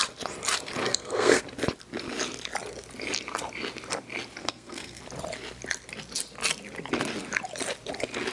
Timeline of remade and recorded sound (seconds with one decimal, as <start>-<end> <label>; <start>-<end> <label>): 0.0-0.8 recorded; 0.8-1.4 remade; 1.4-4.4 recorded; 4.4-5.0 remade; 5.0-8.3 recorded